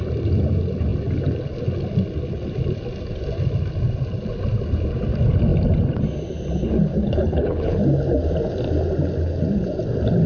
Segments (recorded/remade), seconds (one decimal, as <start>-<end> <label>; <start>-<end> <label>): 0.0-6.9 recorded; 6.9-7.8 remade; 7.8-10.3 recorded